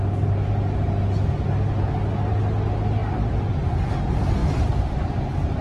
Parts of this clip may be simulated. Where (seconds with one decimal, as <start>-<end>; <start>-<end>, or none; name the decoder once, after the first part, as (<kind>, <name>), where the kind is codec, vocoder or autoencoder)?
3.0-3.9 (vocoder, BigVGAN v2); 4.4-5.6